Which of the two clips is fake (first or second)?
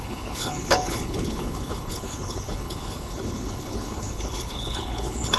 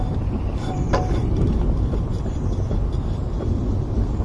first